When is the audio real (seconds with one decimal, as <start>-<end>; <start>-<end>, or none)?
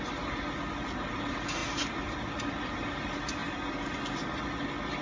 0.0-5.0